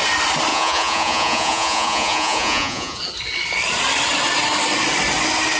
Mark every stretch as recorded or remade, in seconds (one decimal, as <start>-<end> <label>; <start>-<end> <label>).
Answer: 0.0-0.5 recorded; 0.5-3.0 remade; 3.0-5.6 recorded

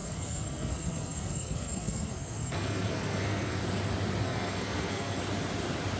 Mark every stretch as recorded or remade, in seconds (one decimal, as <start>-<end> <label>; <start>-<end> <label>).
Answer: 0.0-3.6 remade; 3.6-4.2 recorded; 4.2-5.2 remade; 5.2-6.0 recorded

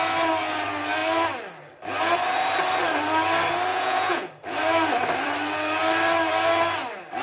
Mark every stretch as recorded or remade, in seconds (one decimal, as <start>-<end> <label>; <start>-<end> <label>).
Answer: 0.0-3.7 recorded; 3.7-4.3 remade; 4.3-7.2 recorded

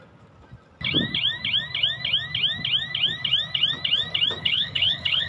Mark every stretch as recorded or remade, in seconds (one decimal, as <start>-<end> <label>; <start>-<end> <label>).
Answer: 0.0-4.4 recorded; 4.4-5.3 remade

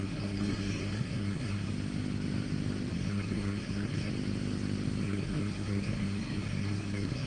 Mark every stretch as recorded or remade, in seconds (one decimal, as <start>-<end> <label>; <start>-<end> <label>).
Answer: 0.0-1.7 remade; 1.7-2.9 recorded; 2.9-4.1 remade; 4.1-5.0 recorded; 5.0-7.3 remade